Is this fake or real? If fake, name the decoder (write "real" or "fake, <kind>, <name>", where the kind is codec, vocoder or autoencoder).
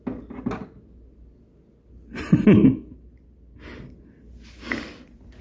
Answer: real